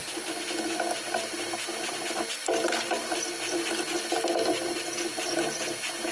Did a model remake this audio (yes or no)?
no